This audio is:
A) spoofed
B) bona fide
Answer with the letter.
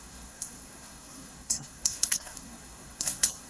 A